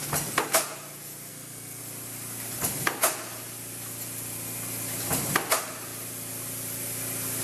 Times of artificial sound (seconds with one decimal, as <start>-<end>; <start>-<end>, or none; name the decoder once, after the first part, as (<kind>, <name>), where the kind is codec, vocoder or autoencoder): 1.3-1.8 (codec, SNAC)